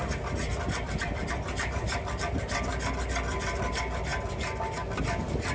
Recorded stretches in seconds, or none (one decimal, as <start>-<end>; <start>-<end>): 0.0-5.5